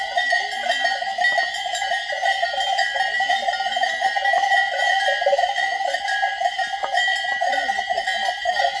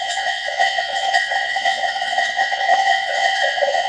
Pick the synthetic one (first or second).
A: second